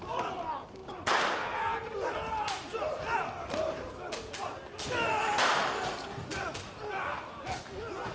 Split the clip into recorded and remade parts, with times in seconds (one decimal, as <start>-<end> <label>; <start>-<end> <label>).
0.0-8.1 recorded